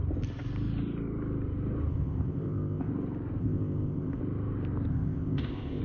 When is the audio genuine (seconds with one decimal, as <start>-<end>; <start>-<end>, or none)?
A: 0.0-1.9; 2.9-3.4; 4.2-4.9